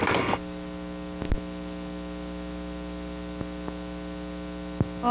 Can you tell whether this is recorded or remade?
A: recorded